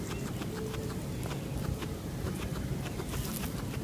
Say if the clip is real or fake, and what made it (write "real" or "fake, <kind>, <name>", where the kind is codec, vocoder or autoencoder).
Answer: real